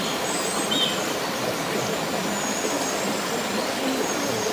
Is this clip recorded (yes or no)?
yes